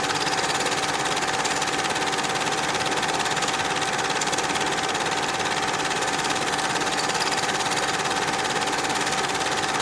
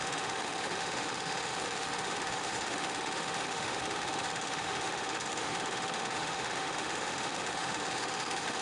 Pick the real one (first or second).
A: first